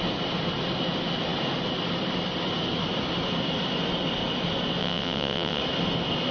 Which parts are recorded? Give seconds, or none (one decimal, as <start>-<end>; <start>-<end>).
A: 0.0-4.8; 5.6-6.3